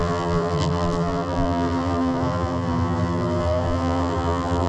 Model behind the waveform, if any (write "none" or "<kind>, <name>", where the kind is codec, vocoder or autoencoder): vocoder, BigVGAN v2